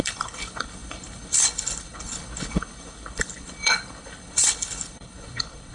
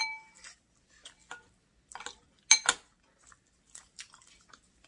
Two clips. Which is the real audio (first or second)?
second